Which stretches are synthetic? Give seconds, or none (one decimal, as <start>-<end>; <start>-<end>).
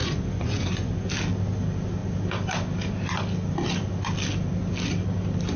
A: 0.0-1.1